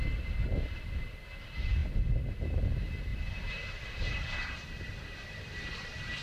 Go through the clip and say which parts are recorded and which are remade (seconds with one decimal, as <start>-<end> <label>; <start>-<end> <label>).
0.0-3.1 recorded; 3.1-6.2 remade